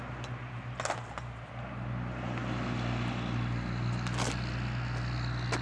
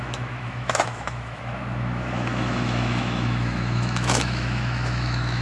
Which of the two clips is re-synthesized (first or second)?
second